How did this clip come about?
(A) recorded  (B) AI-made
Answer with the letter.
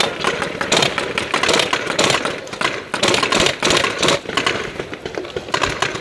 A